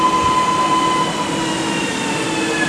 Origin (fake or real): real